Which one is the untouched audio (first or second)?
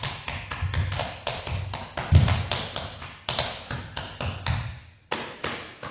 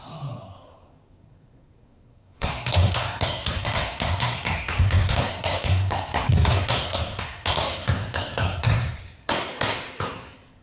first